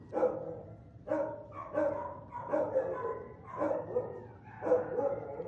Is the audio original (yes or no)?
yes